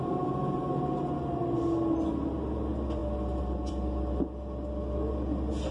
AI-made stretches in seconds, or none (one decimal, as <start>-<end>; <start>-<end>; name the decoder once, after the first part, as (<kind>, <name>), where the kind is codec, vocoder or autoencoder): none